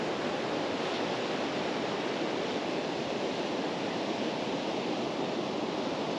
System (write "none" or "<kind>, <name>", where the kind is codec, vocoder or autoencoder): vocoder, BigVGAN v2